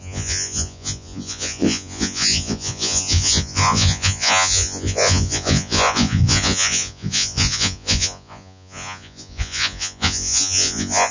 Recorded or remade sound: remade